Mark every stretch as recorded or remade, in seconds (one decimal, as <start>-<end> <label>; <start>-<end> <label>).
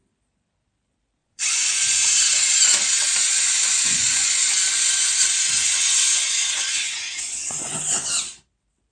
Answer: 0.0-1.2 recorded; 1.2-2.1 remade; 2.1-3.7 recorded; 3.7-8.1 remade; 8.1-8.9 recorded